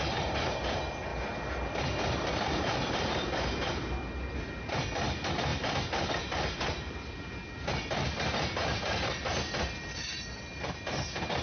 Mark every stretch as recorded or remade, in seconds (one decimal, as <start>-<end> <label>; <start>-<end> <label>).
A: 0.0-11.4 recorded